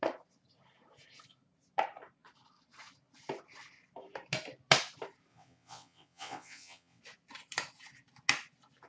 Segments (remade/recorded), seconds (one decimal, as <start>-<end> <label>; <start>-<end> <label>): 0.0-5.3 recorded; 5.3-7.0 remade; 7.0-8.9 recorded